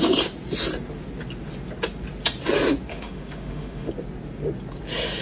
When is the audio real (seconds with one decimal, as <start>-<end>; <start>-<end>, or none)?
0.0-2.9; 3.9-5.2